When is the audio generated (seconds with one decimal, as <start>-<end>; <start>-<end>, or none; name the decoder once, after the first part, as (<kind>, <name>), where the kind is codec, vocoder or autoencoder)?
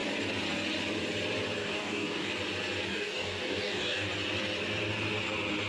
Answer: 1.6-2.3 (codec, DAC); 2.9-4.1